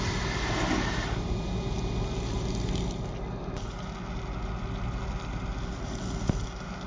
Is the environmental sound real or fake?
real